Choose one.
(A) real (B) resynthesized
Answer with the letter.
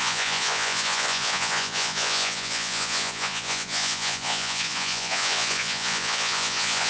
B